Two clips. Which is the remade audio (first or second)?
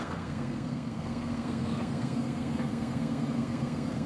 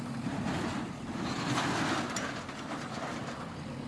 first